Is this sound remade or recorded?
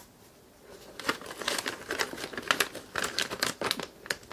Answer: recorded